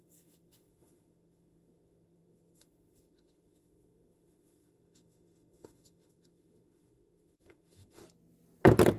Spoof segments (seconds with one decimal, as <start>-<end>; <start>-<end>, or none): 0.0-8.0